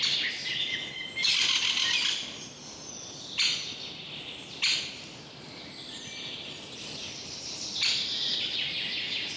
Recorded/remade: recorded